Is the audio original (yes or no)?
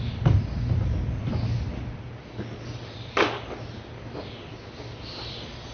yes